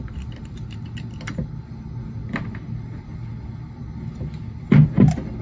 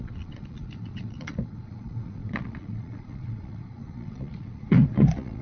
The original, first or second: first